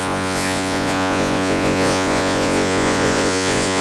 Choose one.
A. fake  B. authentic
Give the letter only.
A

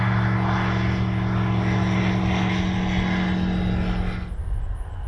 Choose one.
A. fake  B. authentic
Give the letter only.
B